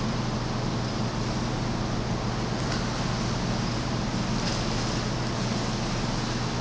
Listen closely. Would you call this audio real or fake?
real